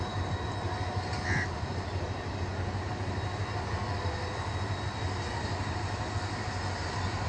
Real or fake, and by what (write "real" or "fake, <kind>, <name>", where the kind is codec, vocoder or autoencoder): real